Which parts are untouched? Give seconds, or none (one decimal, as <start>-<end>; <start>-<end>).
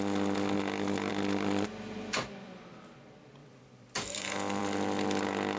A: 0.0-3.4; 4.6-5.6